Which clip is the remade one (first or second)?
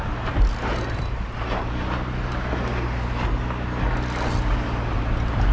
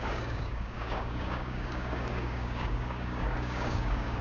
second